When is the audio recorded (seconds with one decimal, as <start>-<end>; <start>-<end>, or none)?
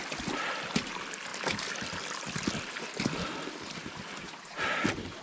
0.0-5.2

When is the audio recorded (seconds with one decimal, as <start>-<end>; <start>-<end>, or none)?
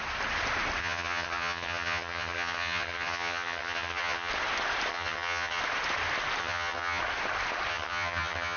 0.0-0.8; 4.3-4.9; 5.6-6.4; 7.0-7.7